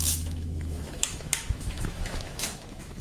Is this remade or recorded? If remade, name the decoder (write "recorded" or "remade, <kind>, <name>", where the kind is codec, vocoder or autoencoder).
remade, autoencoder, DAC-VAE